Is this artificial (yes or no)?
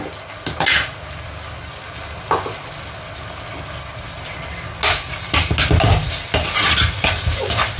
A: no